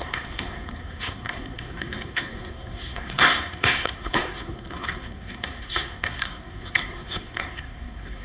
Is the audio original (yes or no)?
no